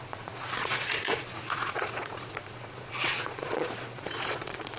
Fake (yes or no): yes